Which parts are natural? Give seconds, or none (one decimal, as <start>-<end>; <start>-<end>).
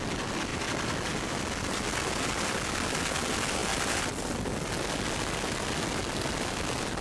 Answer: 0.0-7.0